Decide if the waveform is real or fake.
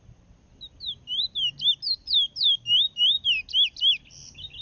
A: real